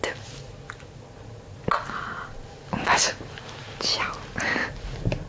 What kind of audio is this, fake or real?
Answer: real